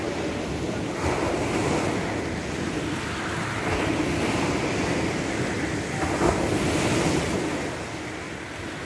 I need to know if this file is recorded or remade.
recorded